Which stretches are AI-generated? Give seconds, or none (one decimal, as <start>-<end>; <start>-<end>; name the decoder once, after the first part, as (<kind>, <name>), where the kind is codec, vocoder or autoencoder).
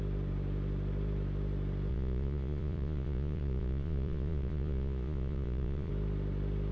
1.9-5.9 (vocoder, Vocos)